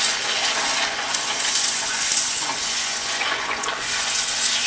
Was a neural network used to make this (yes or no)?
yes